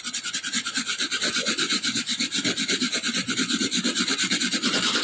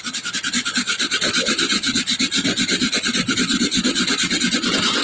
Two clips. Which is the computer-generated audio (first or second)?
first